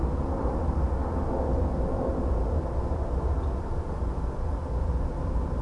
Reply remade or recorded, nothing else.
recorded